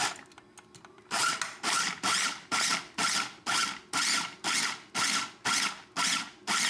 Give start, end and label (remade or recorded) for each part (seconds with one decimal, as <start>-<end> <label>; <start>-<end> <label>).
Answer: 0.0-6.7 recorded